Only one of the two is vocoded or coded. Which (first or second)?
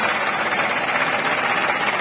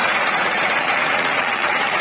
second